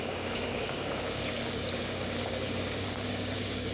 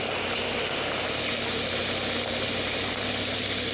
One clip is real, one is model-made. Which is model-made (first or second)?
first